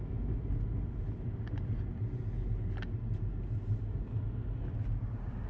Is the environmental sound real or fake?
real